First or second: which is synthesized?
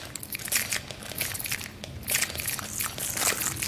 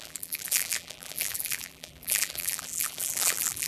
second